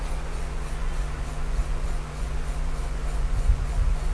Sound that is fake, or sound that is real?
fake